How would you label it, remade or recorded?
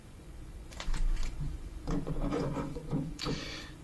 remade